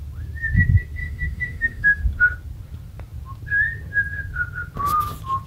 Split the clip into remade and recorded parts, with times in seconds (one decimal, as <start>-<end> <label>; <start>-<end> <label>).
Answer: 0.0-1.0 recorded; 1.0-2.0 remade; 2.0-5.5 recorded